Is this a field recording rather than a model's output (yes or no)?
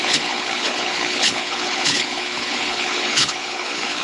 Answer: no